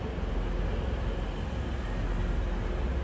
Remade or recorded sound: recorded